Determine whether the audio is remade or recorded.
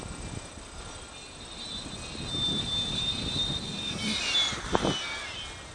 recorded